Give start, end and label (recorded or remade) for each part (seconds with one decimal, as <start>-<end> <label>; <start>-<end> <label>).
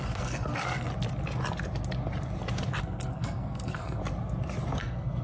0.0-0.9 remade; 0.9-2.8 recorded; 2.8-4.0 remade; 4.0-4.8 recorded; 4.8-5.2 remade